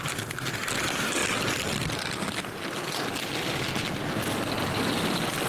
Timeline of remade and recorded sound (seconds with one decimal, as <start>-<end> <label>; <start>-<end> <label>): 0.0-5.5 recorded